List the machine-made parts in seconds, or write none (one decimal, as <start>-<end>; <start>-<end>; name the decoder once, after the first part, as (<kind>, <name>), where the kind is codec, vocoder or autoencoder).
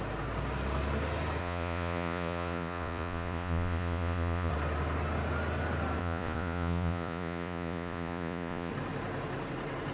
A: 1.4-4.5 (vocoder, Vocos); 6.0-8.7